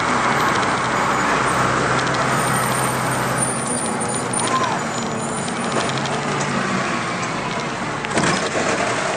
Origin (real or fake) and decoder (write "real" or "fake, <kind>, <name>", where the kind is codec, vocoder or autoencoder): real